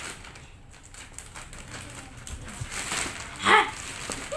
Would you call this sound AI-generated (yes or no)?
no